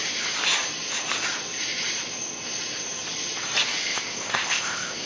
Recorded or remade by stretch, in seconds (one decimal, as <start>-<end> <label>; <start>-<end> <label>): 0.0-3.8 recorded; 3.8-5.1 remade